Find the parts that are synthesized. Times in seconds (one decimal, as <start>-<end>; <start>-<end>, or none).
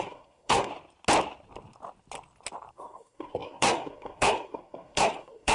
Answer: 0.0-0.7; 2.7-5.5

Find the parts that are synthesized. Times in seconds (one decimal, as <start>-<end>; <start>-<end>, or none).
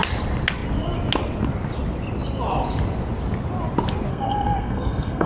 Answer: 4.1-5.3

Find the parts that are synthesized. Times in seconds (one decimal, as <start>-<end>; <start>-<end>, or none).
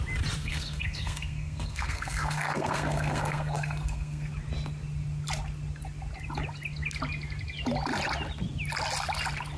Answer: 0.4-4.3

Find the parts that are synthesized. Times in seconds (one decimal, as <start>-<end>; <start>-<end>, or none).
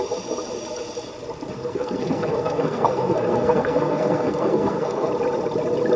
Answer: 1.5-5.1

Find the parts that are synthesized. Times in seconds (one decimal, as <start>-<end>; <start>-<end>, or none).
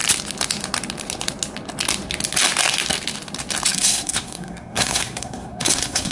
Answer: 3.7-6.1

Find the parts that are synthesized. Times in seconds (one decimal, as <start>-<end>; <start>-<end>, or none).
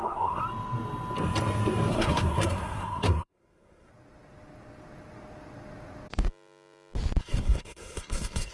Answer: 0.0-0.4; 1.9-3.9; 7.2-8.5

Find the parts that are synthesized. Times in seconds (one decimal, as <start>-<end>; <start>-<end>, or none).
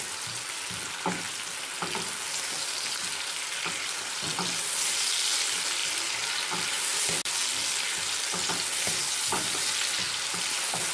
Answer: none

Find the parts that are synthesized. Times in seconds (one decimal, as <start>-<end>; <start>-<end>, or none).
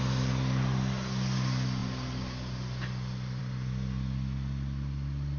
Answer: none